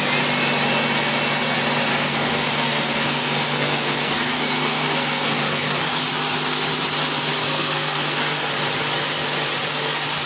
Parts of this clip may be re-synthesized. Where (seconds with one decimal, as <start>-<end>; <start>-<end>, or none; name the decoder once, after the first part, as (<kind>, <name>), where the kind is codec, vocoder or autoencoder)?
1.9-6.0 (codec, SNAC); 7.3-8.5